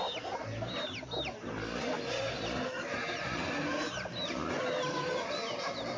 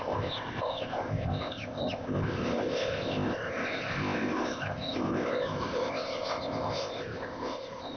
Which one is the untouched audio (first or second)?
first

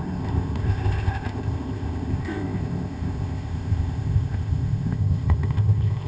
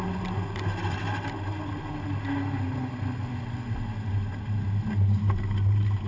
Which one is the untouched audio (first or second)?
second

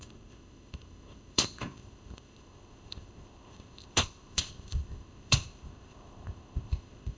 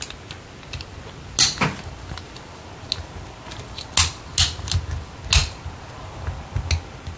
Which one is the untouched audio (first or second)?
second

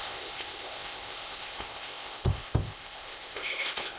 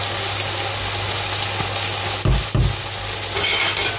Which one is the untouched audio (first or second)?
second